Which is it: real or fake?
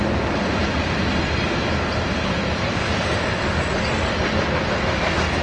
real